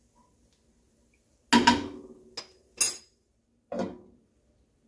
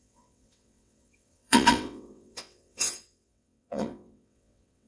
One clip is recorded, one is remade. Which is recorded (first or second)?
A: first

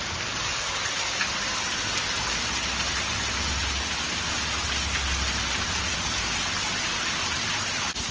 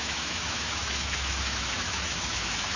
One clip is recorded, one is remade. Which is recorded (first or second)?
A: first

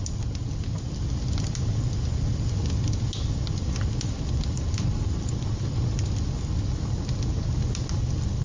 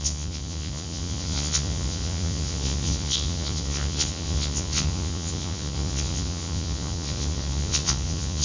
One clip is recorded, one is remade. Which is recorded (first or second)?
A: first